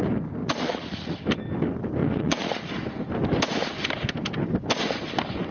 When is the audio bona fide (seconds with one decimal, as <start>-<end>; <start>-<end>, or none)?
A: 0.0-0.4; 1.2-2.0; 2.7-5.5